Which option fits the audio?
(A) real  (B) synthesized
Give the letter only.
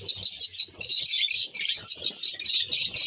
A